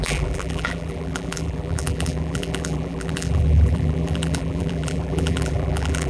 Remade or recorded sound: remade